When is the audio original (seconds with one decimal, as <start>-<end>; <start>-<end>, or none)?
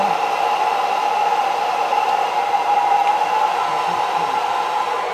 0.7-1.3; 3.0-5.1